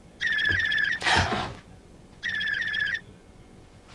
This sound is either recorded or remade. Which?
remade